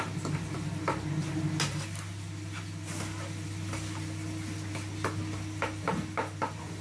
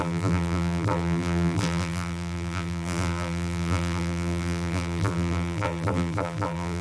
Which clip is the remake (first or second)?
second